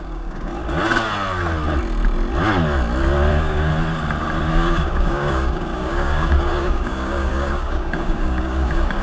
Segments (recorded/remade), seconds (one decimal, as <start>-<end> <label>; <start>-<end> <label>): 0.0-0.5 remade; 0.5-3.3 recorded; 3.3-3.7 remade; 3.7-4.5 recorded; 4.5-9.0 remade